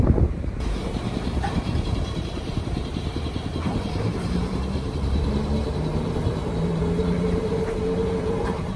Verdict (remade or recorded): remade